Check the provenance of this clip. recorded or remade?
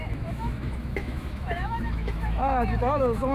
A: remade